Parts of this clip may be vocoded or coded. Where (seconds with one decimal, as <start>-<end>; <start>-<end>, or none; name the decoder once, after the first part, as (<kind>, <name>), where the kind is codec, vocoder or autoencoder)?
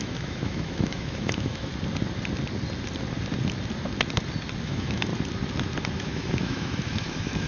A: 0.0-1.7 (autoencoder, DAC-VAE); 4.6-5.1; 6.0-7.5